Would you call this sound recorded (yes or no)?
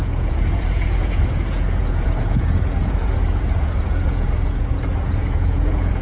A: no